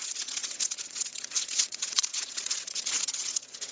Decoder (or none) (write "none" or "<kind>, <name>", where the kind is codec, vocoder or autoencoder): vocoder, WaveNeXt